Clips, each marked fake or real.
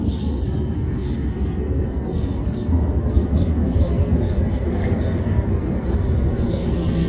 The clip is fake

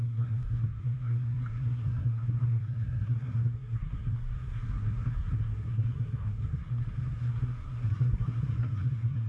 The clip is fake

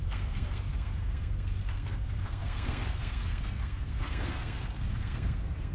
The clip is fake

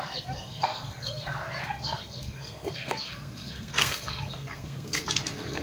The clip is fake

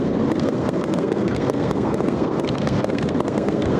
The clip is fake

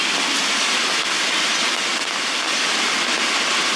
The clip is real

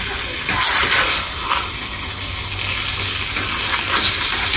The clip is real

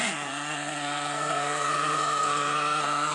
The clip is fake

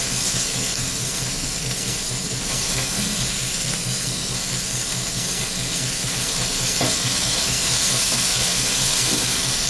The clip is fake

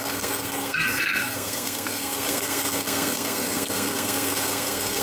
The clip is fake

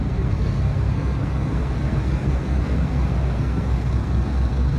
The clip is fake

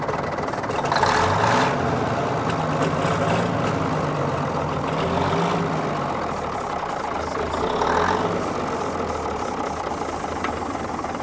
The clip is real